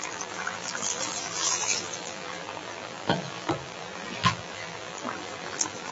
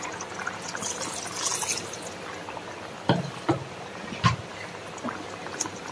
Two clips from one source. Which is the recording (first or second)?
second